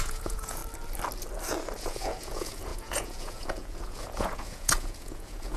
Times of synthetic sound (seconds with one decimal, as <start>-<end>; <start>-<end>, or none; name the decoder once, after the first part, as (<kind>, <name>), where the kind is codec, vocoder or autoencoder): 0.0-0.6 (vocoder, Vocos); 1.8-5.6